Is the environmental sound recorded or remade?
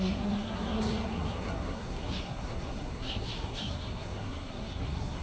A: remade